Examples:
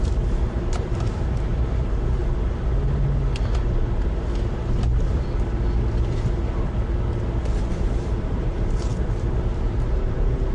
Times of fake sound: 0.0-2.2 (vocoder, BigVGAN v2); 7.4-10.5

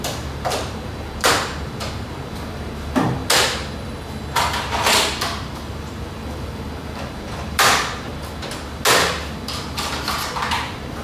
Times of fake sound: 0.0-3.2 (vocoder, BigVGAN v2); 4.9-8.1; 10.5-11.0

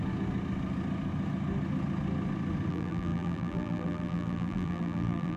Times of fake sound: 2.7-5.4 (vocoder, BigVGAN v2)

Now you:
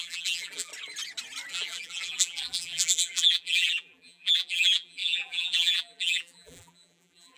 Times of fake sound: 0.0-0.7 (vocoder, BigVGAN v2); 1.5-7.4

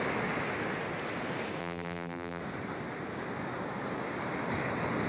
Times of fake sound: 1.6-2.4 (vocoder, BigVGAN v2)